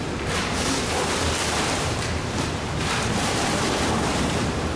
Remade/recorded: remade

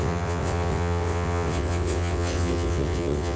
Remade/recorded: remade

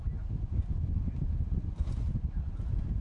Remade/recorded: recorded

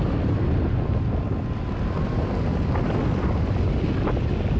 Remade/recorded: recorded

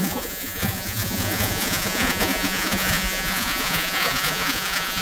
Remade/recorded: remade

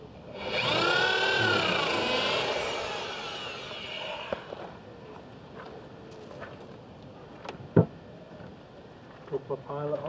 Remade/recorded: recorded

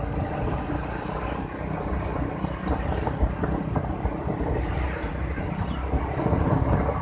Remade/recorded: recorded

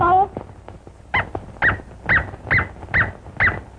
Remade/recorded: recorded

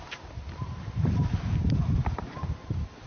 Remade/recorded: remade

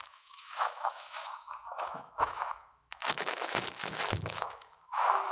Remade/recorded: remade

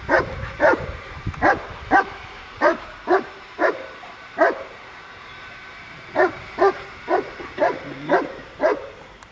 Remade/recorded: remade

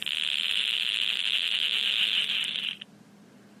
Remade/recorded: recorded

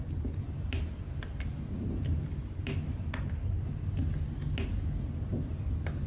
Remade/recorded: recorded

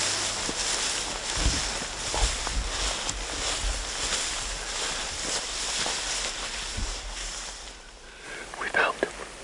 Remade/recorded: recorded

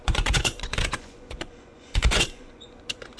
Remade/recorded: remade